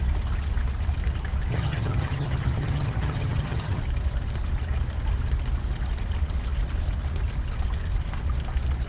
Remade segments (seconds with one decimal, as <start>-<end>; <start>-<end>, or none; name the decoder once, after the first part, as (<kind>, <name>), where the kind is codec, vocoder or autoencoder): 1.5-3.8 (vocoder, HiFi-GAN)